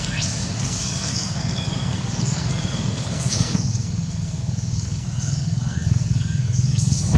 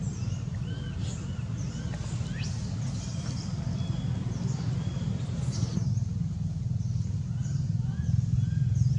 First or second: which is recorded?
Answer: second